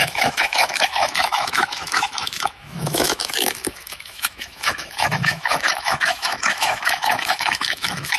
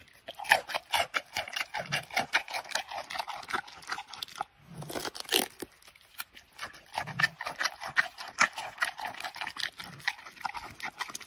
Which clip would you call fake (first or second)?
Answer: first